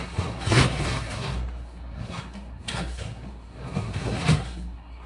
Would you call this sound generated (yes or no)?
yes